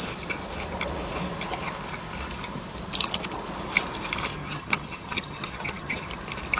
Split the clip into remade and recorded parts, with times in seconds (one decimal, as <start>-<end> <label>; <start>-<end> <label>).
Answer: 0.0-4.3 recorded; 4.3-6.1 remade; 6.1-6.6 recorded